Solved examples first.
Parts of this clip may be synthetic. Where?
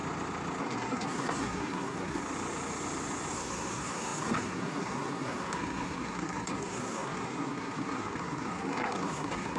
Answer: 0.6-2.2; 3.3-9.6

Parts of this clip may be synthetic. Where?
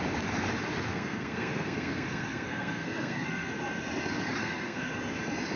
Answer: 0.9-3.5; 4.4-4.9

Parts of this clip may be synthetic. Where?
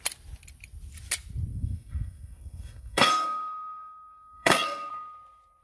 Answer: 1.5-4.9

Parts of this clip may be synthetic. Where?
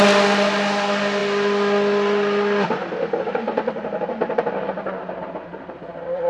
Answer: none